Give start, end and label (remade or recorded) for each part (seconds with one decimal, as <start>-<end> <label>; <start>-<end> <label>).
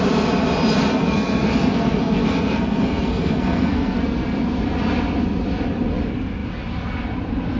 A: 0.0-0.9 recorded; 0.9-4.0 remade; 4.0-7.6 recorded